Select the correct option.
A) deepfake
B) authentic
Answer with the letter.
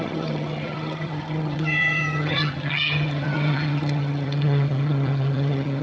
A